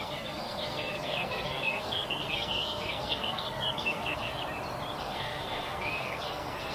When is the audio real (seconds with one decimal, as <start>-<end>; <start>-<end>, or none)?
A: 4.4-5.0